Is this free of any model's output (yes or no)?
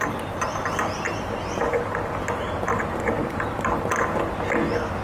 yes